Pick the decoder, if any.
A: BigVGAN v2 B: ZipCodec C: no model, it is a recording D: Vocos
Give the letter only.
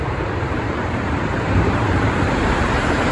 A